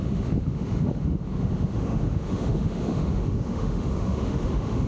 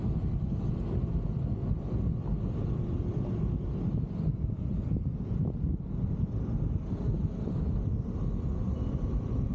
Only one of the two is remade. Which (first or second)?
first